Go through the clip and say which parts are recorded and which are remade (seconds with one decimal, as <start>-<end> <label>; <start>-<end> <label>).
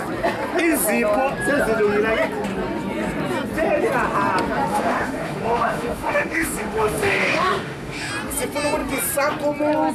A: 0.0-4.7 recorded; 4.7-8.1 remade; 8.1-9.9 recorded